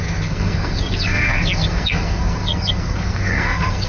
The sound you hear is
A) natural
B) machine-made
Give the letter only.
B